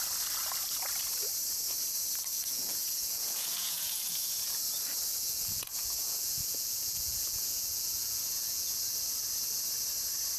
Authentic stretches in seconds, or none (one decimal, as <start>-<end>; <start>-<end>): 0.0-2.3; 4.6-5.1; 8.8-10.4